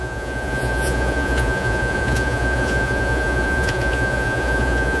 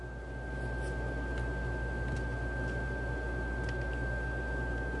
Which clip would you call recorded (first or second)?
second